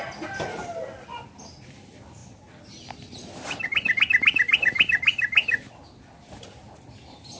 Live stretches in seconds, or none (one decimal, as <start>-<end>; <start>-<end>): 0.0-7.4